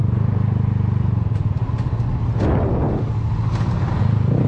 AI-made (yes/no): no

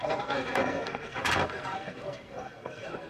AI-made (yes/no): yes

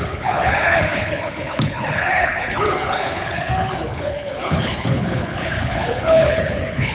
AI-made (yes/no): yes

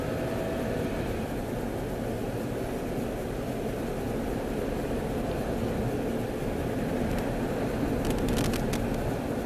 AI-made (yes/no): no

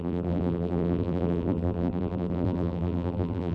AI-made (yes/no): yes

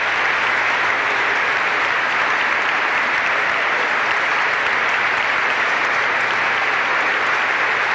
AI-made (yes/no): yes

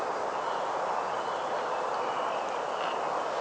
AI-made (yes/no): no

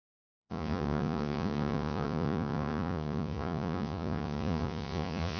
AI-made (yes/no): yes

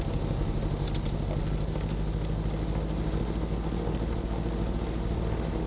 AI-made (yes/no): no